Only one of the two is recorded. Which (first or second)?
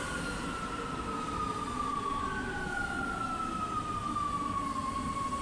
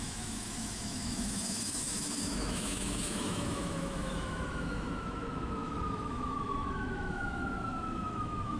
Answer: first